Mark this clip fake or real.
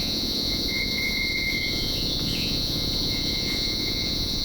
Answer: fake